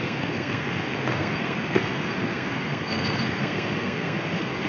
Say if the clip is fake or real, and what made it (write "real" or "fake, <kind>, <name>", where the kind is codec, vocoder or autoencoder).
fake, codec, SNAC